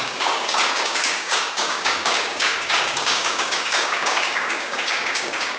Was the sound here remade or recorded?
remade